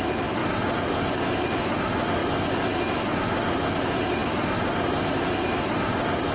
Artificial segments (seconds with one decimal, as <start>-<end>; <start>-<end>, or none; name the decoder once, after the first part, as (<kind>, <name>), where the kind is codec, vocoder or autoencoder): 0.0-2.2 (vocoder, BigVGAN v2); 3.5-6.3